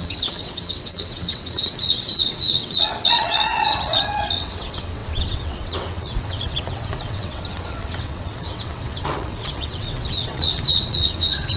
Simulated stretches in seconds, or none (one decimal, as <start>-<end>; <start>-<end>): 0.0-11.6